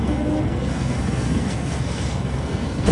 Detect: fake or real fake